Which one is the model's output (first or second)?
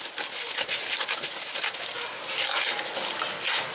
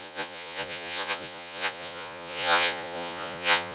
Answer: second